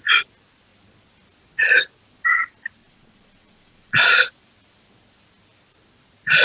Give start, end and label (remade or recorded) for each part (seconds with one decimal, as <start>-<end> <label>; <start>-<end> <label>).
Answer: 0.0-2.8 recorded; 2.8-4.3 remade; 4.3-6.4 recorded